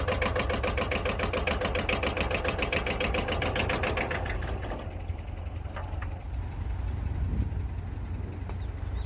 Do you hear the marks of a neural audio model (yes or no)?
no